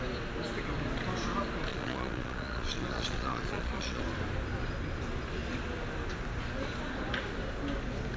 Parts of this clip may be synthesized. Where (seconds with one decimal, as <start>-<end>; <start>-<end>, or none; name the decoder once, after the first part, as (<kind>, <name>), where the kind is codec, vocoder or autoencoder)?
1.7-4.0 (vocoder, Vocos)

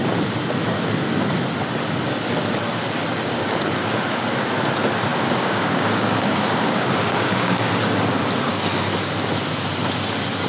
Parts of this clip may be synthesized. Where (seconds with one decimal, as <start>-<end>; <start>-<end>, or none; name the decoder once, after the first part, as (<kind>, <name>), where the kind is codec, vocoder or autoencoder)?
5.1-7.7 (codec, DAC)

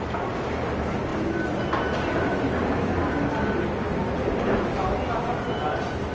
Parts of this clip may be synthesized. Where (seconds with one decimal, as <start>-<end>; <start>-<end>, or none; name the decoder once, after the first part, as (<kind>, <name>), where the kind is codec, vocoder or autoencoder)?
none

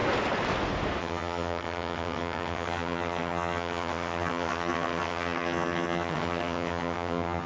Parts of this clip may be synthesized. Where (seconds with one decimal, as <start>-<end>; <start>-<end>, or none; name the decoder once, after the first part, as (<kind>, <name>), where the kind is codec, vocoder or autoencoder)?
1.0-7.5 (vocoder, HiFi-GAN)

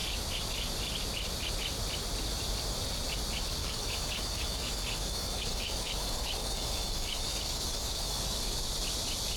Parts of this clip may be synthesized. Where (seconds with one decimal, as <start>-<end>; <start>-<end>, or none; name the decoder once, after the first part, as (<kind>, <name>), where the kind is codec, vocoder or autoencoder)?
3.6-8.6 (codec, DAC)

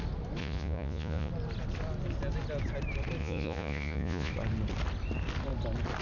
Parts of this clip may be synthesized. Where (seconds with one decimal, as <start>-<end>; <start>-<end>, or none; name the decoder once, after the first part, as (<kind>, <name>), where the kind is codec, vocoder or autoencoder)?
0.4-1.3 (vocoder, Vocos); 3.2-4.3